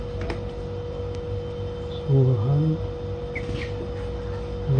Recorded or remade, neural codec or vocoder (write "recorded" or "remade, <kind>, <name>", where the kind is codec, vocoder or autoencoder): recorded